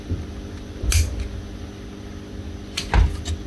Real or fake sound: real